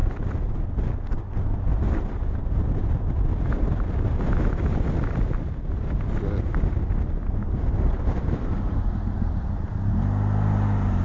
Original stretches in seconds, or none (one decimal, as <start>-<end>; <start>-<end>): 0.0-11.0